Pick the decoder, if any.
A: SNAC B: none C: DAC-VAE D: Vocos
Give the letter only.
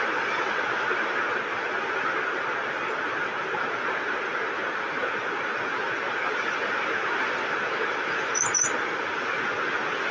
B